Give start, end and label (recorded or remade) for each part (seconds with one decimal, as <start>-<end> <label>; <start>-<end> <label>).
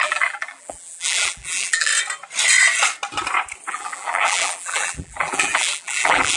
0.0-1.9 remade; 1.9-3.7 recorded; 3.7-6.4 remade